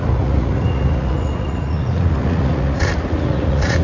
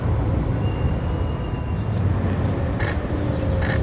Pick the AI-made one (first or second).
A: first